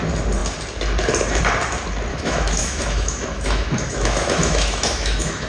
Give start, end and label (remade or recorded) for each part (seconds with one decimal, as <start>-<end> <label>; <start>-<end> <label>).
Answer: 0.0-2.1 recorded; 2.1-5.5 remade